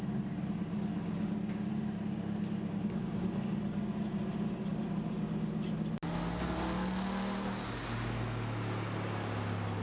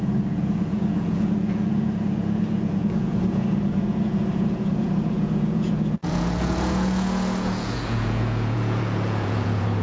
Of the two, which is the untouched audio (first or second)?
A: first